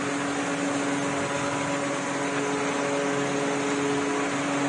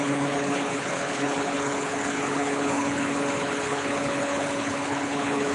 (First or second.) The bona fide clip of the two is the first